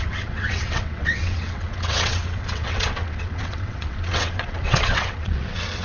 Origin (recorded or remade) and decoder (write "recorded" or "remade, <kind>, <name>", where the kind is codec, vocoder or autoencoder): remade, vocoder, WaveNeXt